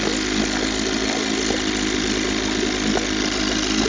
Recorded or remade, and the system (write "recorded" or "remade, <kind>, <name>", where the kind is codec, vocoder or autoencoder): recorded